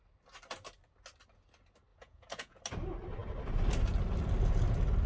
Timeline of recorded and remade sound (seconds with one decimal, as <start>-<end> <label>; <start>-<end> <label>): 0.0-1.9 recorded; 1.9-2.6 remade; 2.6-5.1 recorded